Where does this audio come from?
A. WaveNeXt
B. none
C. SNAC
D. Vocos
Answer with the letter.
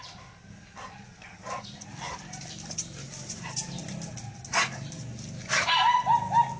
B